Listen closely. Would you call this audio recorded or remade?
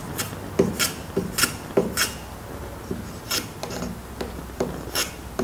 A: recorded